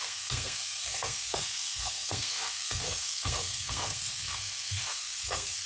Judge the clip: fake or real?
fake